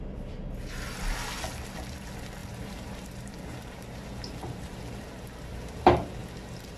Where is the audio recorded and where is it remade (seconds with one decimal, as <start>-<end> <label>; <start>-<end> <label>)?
0.0-2.4 recorded; 2.4-5.8 remade; 5.8-6.2 recorded; 6.2-6.8 remade